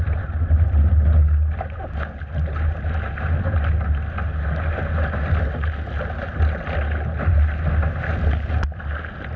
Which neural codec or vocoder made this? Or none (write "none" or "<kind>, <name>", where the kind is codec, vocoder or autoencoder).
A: none